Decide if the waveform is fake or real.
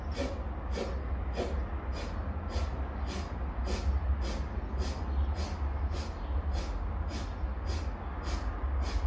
real